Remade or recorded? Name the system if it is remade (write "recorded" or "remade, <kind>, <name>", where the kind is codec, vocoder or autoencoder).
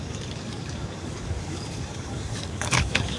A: remade, codec, DAC